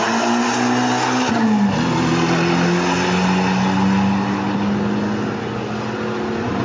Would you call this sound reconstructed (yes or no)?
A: no